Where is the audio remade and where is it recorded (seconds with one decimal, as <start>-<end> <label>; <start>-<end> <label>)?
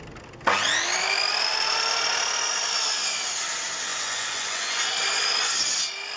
0.0-3.9 recorded; 3.9-4.8 remade; 4.8-6.2 recorded